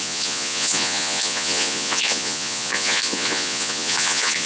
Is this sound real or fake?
fake